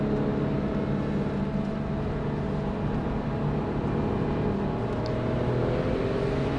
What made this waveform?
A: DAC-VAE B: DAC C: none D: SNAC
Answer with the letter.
C